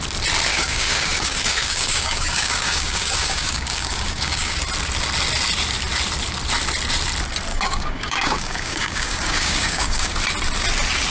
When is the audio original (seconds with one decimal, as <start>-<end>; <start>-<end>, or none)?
0.0-0.5; 4.6-7.5; 10.1-11.1